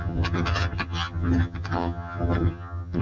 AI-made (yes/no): yes